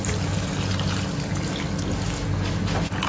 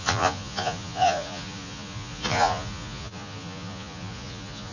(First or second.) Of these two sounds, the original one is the first